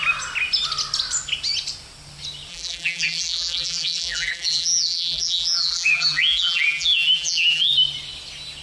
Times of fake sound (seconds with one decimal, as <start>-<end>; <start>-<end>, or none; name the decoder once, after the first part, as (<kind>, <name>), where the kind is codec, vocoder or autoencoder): 2.5-7.7 (vocoder, BigVGAN v2)